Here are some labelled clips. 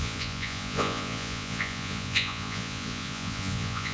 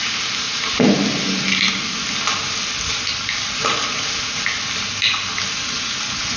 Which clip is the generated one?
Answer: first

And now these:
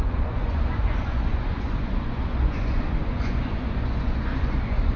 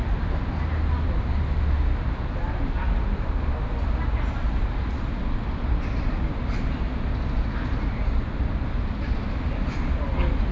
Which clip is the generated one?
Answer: first